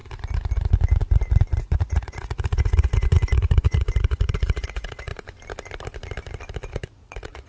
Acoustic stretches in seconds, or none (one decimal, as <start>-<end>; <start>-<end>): 0.0-1.6; 5.1-6.7